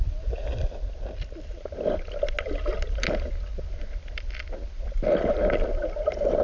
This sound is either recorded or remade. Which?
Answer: recorded